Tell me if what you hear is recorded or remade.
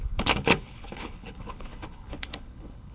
remade